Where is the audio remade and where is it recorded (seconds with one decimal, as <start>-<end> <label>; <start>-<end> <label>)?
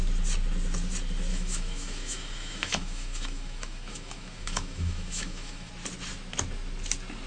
0.0-1.3 recorded; 1.3-5.7 remade; 5.7-7.3 recorded